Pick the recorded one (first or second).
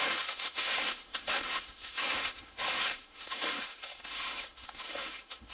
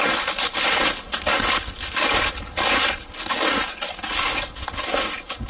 second